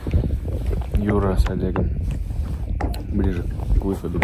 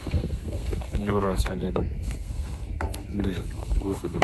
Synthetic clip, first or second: second